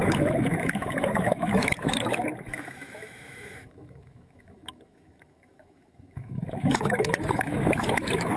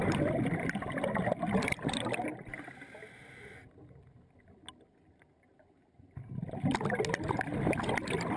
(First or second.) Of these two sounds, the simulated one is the first